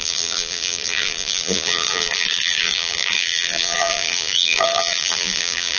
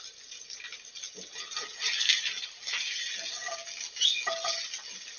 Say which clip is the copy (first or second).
first